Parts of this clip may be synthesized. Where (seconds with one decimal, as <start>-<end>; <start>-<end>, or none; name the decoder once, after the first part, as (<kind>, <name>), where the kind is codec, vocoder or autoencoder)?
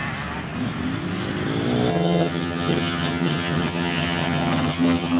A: 1.9-5.2 (vocoder, HiFi-GAN)